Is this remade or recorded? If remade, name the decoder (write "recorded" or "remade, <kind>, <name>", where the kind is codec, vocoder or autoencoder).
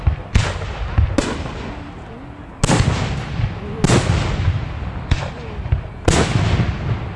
recorded